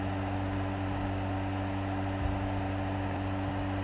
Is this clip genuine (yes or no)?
yes